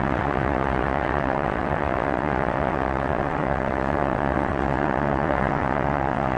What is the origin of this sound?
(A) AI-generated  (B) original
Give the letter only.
A